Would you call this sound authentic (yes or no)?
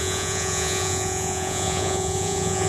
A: no